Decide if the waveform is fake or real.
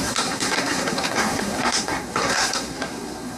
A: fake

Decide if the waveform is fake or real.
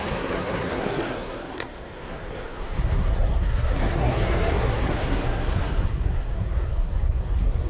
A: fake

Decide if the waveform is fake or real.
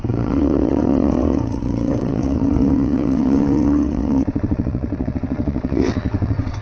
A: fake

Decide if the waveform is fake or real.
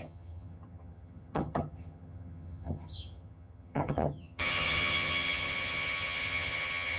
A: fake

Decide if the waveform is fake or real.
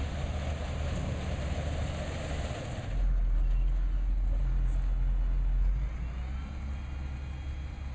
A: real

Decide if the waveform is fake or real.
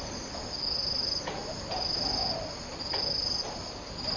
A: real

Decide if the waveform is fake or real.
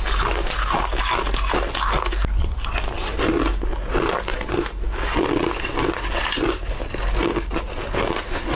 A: real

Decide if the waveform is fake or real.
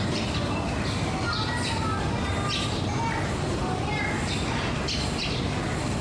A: real